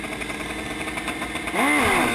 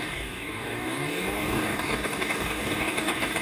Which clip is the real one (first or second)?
first